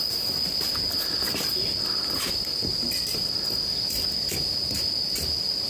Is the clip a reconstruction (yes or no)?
no